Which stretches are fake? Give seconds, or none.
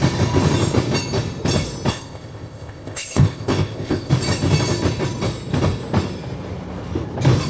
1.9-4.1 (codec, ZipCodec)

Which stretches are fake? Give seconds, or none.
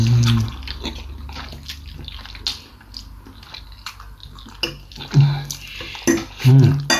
none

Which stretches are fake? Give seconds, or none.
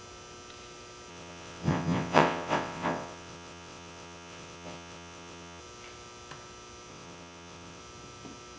1.1-5.6 (vocoder, WaveNeXt); 6.9-7.8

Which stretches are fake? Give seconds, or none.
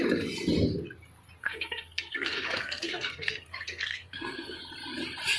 1.4-4.6 (codec, SNAC)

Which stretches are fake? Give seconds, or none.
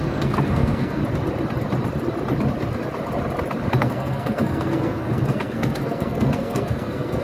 0.0-1.0 (codec, SNAC); 3.8-7.2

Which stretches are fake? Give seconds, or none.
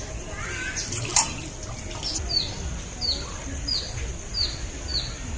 none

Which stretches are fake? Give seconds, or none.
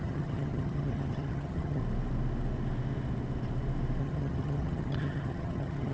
0.0-1.8 (vocoder, HiFi-GAN); 4.0-5.9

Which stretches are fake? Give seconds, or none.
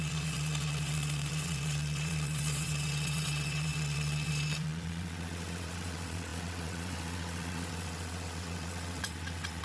0.0-9.6 (vocoder, WaveNeXt)